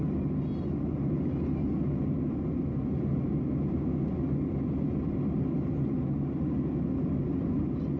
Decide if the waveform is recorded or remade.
recorded